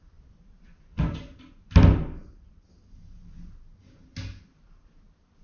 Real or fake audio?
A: real